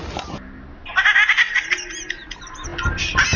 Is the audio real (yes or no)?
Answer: yes